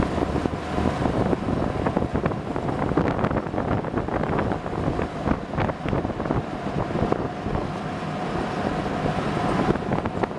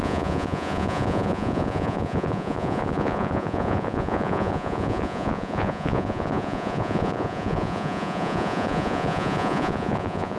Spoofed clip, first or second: second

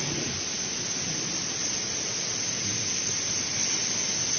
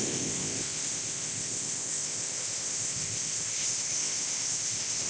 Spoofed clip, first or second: second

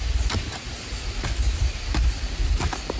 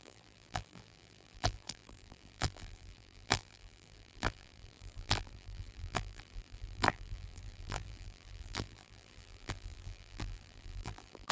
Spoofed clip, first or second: second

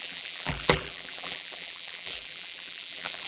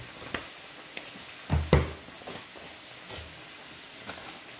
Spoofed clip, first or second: first